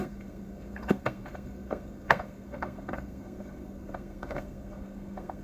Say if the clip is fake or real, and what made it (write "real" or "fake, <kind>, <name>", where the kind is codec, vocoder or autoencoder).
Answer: fake, codec, SNAC